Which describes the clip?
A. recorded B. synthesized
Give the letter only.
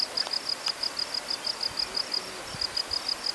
A